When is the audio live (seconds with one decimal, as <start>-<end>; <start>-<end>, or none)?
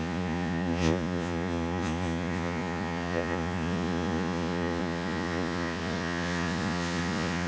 none